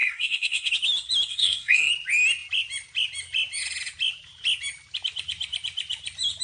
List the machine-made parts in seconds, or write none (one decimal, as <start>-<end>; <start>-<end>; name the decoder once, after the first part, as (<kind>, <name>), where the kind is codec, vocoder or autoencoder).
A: 0.0-0.7 (codec, SNAC); 1.3-1.9